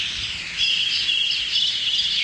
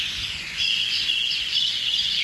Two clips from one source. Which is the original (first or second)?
first